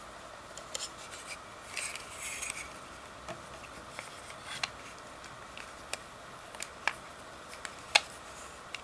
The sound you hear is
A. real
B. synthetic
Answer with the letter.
A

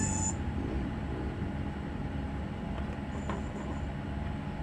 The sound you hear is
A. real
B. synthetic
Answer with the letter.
A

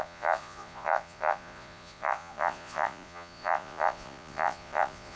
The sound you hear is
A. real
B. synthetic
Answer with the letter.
B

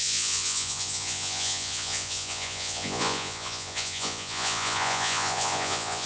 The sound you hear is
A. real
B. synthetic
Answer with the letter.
B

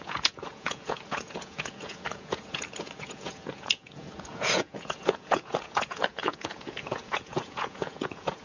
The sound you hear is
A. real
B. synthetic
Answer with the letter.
B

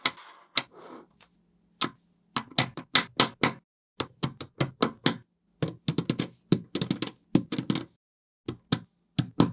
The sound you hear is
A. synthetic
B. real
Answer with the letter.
B